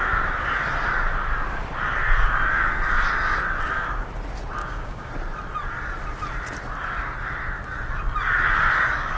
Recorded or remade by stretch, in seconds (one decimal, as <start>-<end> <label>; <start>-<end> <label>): 0.0-4.6 recorded; 4.6-5.1 remade; 5.1-9.2 recorded

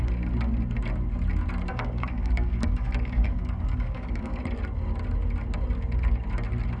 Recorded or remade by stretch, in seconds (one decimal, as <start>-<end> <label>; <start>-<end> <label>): 0.0-1.7 recorded; 1.7-4.4 remade; 4.4-6.8 recorded